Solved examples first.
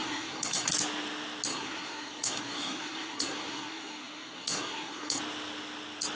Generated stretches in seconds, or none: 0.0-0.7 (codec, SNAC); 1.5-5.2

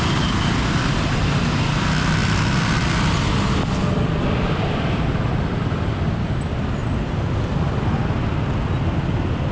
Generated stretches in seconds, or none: none

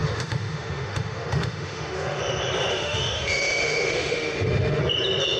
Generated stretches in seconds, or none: 0.0-2.2 (autoencoder, DAC-VAE); 2.7-4.8

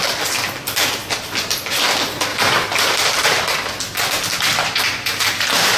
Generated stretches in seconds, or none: 2.3-3.8 (vocoder, BigVGAN v2); 4.5-5.8

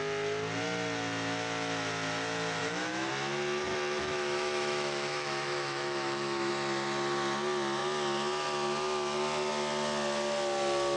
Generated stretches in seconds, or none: 2.6-3.1 (autoencoder, DAC-VAE); 4.0-6.5

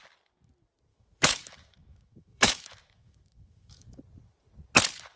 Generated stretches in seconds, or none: 0.9-4.0 (autoencoder, DAC-VAE)